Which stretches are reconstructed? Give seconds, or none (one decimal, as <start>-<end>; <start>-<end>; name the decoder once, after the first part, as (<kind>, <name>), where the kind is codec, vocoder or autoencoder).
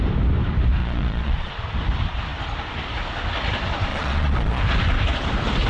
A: 0.8-1.5 (vocoder, Vocos); 3.9-4.6